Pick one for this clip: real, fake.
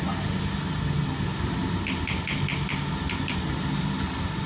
real